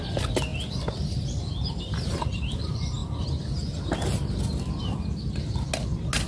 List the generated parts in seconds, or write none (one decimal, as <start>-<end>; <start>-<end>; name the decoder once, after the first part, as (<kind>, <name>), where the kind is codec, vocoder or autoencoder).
none